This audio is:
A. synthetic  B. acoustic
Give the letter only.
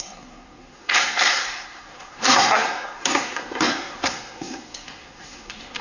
A